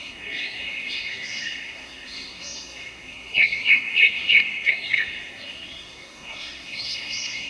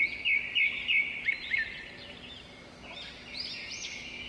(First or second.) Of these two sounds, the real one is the second